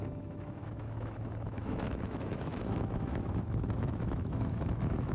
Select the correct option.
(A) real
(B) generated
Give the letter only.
B